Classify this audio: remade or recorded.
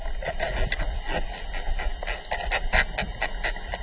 recorded